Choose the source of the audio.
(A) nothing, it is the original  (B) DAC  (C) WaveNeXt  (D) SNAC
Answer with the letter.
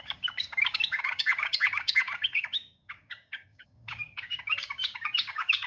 B